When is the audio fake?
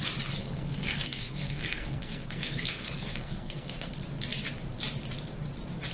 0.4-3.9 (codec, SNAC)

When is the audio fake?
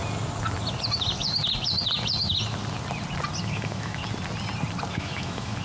3.4-4.0 (autoencoder, DAC-VAE); 4.9-5.6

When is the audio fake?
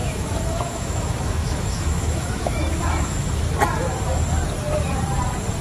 0.0-3.4 (autoencoder, DAC-VAE)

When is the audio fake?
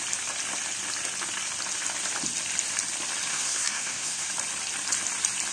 3.3-4.3 (codec, SNAC)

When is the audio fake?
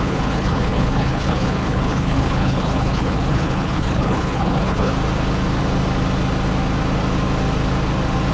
0.0-4.9 (codec, HILCodec)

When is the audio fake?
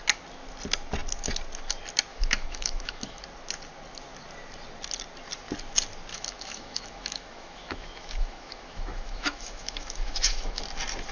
2.1-3.2 (autoencoder, DAC-VAE); 6.1-10.6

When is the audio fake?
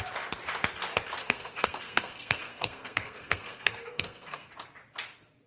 1.2-4.5 (codec, SNAC)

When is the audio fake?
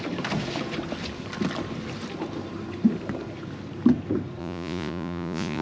4.4-5.6 (vocoder, Vocos)